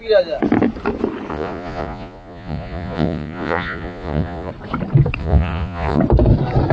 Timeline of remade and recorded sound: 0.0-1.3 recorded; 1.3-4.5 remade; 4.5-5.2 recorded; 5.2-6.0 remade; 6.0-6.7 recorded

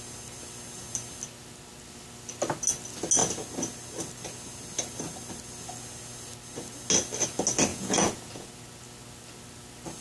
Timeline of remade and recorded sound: 0.0-7.7 recorded; 7.7-8.5 remade; 8.5-10.0 recorded